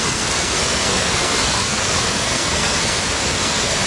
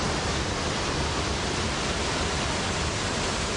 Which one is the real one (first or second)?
second